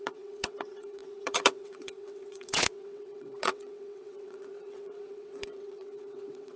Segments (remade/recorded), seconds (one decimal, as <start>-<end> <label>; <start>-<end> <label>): 0.0-6.6 remade